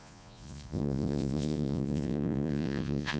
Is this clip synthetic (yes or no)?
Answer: yes